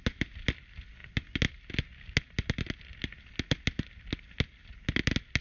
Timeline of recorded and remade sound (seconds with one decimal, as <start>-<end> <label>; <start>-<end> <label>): 0.0-5.4 recorded

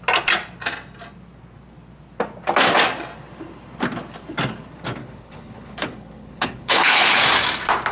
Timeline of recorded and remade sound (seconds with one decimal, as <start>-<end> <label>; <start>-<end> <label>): 0.0-5.0 recorded; 5.0-7.2 remade; 7.2-7.9 recorded

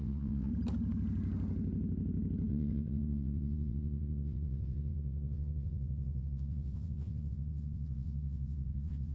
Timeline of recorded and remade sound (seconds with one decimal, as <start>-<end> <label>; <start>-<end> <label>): 0.0-0.5 remade; 0.5-2.5 recorded; 2.5-9.1 remade